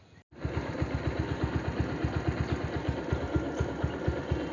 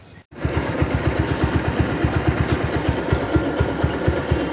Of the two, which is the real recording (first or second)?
first